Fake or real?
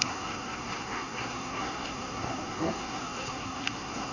fake